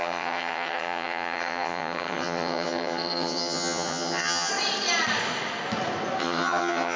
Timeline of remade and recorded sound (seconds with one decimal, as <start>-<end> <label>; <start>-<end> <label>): 0.0-4.5 remade; 4.5-6.2 recorded; 6.2-7.0 remade